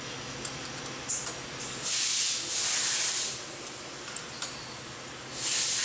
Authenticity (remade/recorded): recorded